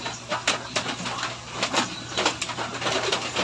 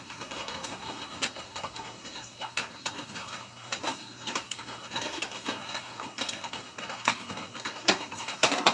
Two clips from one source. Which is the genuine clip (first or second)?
first